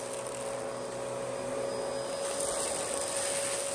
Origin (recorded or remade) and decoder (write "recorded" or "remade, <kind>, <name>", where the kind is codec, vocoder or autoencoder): recorded